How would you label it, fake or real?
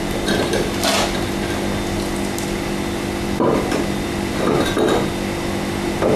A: real